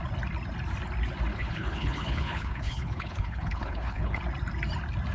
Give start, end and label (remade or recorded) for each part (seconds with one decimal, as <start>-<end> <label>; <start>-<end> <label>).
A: 0.0-1.3 recorded; 1.3-4.2 remade; 4.2-5.1 recorded